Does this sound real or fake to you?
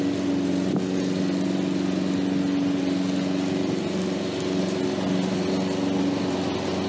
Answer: real